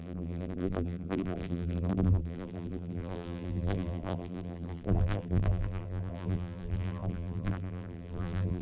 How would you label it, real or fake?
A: fake